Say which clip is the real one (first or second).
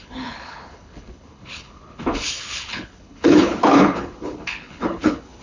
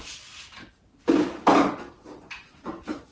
second